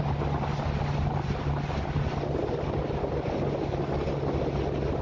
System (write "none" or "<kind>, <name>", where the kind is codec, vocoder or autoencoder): none